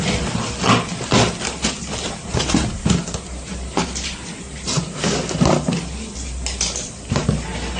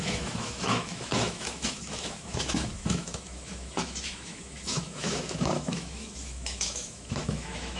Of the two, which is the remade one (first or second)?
second